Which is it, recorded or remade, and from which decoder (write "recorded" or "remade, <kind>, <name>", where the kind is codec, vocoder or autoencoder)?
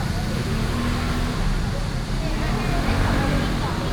recorded